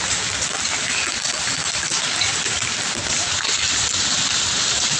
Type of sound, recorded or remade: recorded